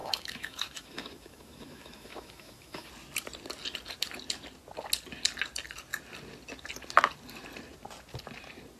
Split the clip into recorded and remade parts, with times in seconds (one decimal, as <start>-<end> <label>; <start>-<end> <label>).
0.0-2.9 remade; 2.9-8.8 recorded